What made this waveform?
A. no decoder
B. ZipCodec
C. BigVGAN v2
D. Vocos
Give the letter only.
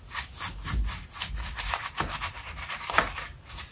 A